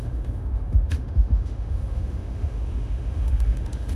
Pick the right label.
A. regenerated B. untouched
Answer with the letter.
A